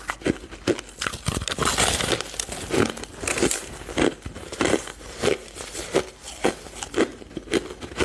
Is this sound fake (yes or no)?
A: no